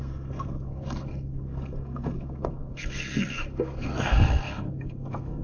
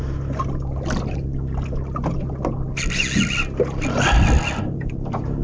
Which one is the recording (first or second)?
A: second